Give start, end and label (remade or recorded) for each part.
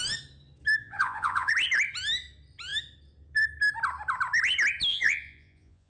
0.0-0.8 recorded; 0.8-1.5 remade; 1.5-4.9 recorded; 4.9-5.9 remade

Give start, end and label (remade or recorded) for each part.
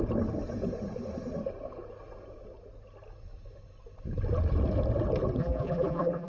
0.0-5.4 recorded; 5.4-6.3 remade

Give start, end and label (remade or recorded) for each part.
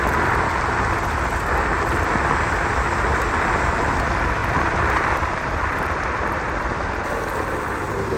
0.0-4.4 recorded; 4.4-6.5 remade; 6.5-8.2 recorded